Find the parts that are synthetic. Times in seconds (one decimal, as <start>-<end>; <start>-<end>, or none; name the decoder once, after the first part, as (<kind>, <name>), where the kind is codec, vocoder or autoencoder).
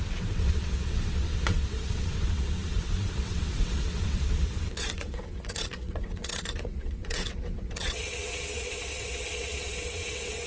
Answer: 0.0-10.5 (vocoder, WaveNeXt)